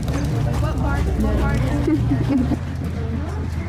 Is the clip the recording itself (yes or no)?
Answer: yes